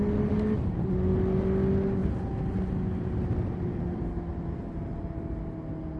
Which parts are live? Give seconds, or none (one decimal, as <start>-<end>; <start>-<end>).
0.0-6.0